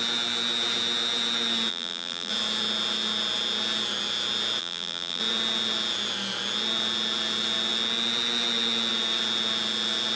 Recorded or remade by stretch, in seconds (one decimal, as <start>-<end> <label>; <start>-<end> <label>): 0.0-1.7 recorded; 1.7-2.3 remade; 2.3-4.6 recorded; 4.6-5.2 remade; 5.2-10.2 recorded